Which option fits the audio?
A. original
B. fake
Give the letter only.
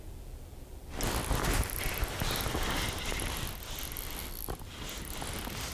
A